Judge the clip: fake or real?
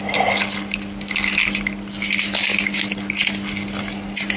real